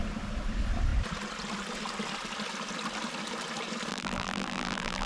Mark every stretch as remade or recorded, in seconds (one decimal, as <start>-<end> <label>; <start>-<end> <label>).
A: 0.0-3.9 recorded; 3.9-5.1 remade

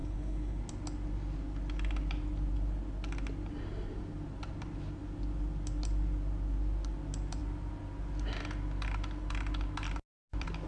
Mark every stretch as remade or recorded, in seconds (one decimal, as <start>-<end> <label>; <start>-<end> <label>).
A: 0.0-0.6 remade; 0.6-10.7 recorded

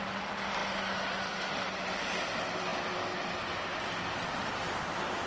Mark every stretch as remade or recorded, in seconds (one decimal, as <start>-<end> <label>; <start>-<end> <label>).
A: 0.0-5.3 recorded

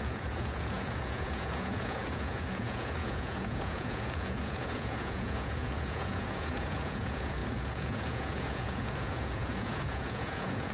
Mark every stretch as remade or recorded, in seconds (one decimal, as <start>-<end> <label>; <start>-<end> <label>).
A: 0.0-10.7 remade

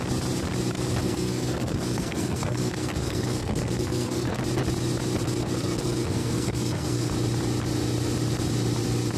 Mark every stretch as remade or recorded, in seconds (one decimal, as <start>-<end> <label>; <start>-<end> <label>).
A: 0.0-1.0 recorded; 1.0-4.4 remade; 4.4-5.4 recorded; 5.4-7.1 remade; 7.1-9.2 recorded